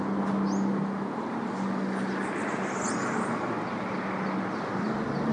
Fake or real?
real